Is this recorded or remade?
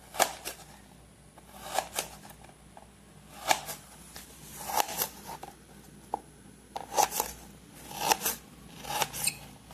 recorded